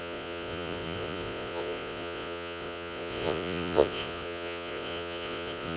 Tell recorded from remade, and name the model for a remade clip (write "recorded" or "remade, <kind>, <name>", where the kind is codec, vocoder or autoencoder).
remade, vocoder, Vocos